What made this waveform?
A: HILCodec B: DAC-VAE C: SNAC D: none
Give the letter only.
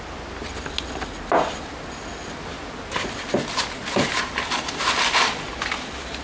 D